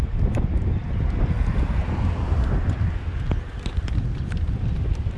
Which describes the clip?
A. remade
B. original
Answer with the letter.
B